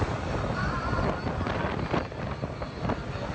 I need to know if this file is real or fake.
real